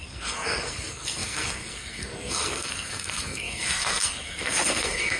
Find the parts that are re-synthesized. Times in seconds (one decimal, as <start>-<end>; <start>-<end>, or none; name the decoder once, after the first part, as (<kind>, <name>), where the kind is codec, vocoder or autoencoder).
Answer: 0.0-5.2 (codec, SNAC)